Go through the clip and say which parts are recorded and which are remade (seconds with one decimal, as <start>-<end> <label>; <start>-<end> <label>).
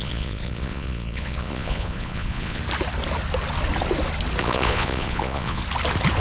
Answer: 0.0-2.6 remade; 2.6-4.4 recorded; 4.4-5.6 remade; 5.6-6.2 recorded